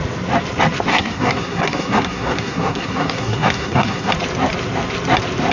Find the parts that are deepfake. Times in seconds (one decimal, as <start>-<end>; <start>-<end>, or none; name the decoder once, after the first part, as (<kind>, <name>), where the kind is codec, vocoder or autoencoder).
0.9-4.1 (codec, SNAC)